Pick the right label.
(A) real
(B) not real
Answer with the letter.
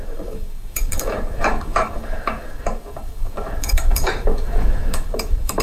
B